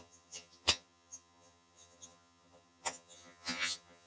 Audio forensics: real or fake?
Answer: fake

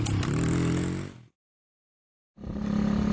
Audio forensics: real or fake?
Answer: real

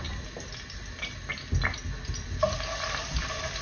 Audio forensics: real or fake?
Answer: real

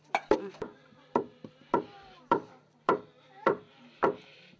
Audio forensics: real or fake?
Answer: fake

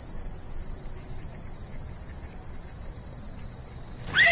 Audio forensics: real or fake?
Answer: real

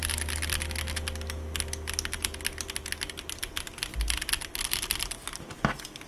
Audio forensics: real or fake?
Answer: real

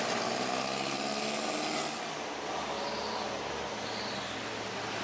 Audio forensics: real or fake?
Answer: real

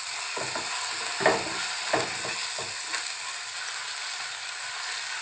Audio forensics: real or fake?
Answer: real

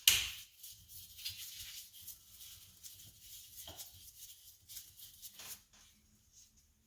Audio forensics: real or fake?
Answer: real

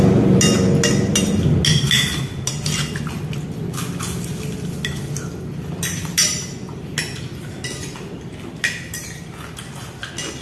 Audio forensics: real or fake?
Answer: real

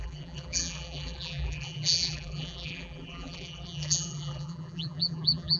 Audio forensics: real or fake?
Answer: fake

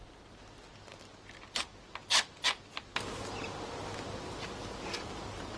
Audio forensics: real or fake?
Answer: real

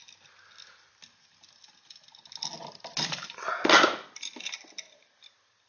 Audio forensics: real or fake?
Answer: real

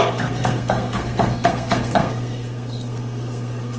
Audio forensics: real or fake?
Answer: fake